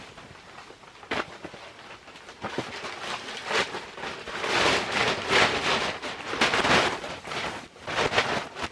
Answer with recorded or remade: recorded